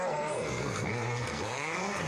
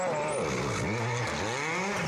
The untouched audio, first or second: second